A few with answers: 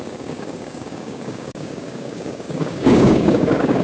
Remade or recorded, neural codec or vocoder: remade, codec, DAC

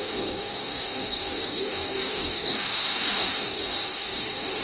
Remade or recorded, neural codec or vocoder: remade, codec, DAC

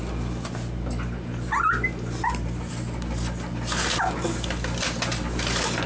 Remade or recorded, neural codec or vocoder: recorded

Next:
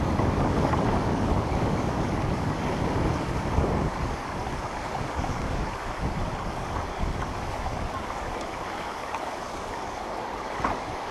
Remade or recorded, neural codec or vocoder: remade, codec, DAC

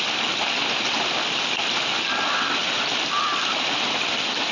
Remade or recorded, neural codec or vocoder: recorded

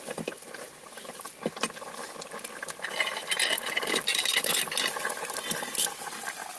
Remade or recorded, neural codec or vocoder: recorded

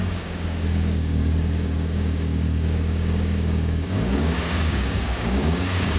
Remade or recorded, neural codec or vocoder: remade, codec, DAC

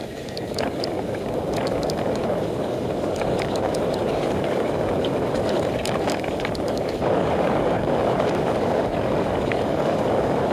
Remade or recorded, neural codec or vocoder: remade, codec, DAC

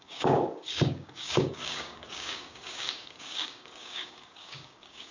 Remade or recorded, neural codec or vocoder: remade, codec, DAC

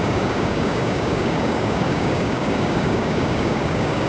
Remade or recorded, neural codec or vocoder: remade, codec, DAC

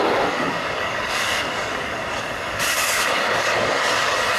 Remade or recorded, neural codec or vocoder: remade, codec, DAC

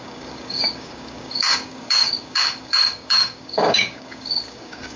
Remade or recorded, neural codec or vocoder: remade, codec, DAC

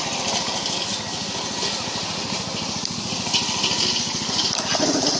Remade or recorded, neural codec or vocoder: recorded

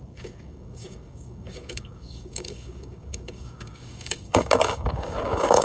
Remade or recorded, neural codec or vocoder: remade, codec, DAC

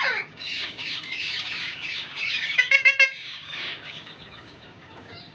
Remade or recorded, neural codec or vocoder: remade, codec, DAC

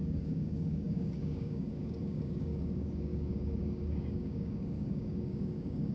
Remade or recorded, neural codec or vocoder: remade, codec, DAC